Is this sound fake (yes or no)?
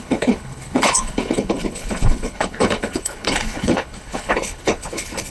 yes